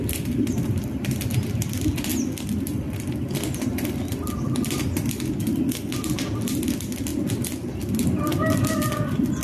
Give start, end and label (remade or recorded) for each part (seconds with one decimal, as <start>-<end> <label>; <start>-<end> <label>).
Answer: 0.0-9.4 recorded